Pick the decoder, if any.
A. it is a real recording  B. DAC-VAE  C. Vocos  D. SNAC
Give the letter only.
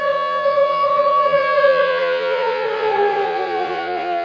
C